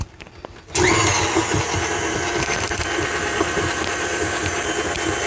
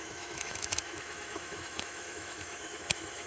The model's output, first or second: second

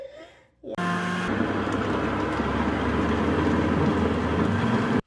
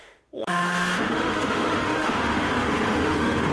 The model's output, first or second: second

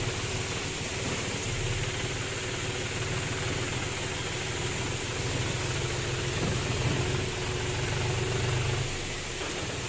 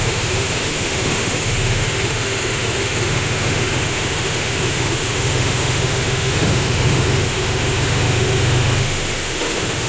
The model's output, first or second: second